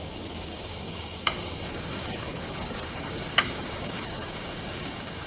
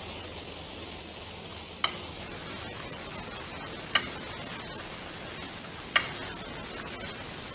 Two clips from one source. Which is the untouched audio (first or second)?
second